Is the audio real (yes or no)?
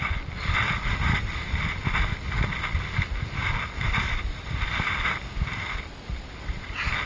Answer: yes